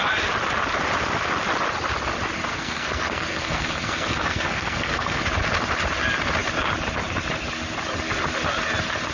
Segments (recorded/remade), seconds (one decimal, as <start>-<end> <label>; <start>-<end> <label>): 0.0-2.5 recorded; 2.5-5.2 remade; 5.2-9.1 recorded